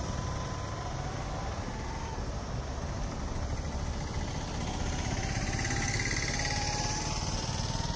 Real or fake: real